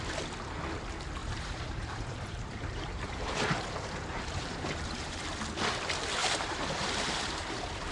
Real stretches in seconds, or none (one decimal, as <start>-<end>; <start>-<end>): 0.0-1.2; 5.2-6.2